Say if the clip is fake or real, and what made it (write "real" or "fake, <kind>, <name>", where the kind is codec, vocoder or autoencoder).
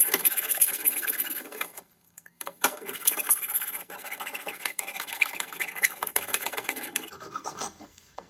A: fake, codec, SNAC